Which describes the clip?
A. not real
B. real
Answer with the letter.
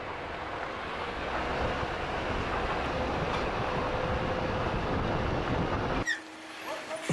B